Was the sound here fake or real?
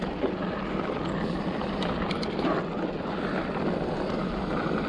real